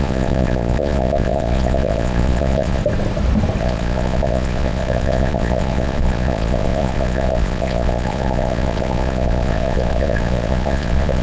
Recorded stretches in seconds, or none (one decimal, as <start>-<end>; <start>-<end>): 2.8-3.6

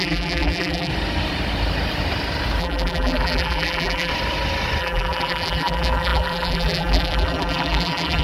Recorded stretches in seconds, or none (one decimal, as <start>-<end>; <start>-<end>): 0.9-2.6; 4.1-4.8